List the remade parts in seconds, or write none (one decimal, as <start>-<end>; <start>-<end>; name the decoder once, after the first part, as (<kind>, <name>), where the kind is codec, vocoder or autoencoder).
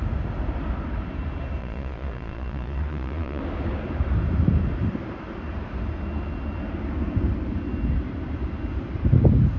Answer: 1.6-3.4 (vocoder, Vocos)